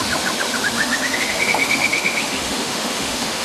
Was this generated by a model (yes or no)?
yes